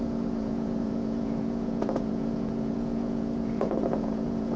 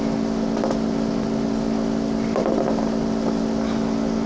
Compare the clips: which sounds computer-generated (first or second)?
first